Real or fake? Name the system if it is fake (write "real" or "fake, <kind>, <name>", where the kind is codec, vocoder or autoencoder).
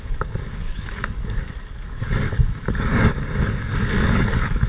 fake, codec, DAC